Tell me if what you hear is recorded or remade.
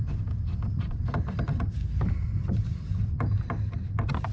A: recorded